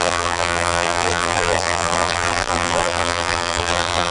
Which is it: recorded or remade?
remade